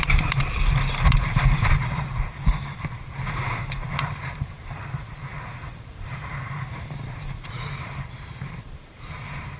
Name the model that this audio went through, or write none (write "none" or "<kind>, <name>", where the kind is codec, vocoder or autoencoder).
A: vocoder, BigVGAN v2